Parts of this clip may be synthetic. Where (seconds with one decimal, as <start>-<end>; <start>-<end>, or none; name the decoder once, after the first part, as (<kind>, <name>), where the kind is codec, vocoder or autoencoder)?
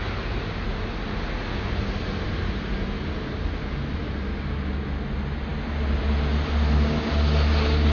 none